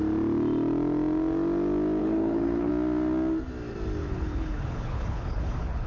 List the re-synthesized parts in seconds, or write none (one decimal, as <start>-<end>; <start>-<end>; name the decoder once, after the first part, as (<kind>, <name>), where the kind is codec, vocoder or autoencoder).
2.0-2.7 (codec, HILCodec); 4.0-5.9